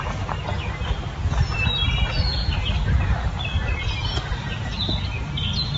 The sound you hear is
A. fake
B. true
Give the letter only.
B